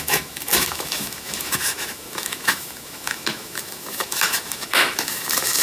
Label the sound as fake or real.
fake